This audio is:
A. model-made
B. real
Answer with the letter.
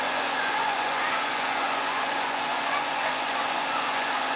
A